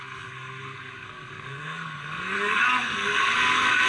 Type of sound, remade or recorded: remade